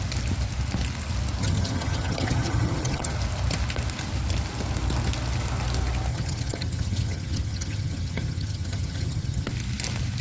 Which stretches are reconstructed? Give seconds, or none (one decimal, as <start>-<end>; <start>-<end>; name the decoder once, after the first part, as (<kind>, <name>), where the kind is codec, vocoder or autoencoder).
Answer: 1.4-3.1 (vocoder, HiFi-GAN); 6.1-9.5